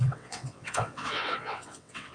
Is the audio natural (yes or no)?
no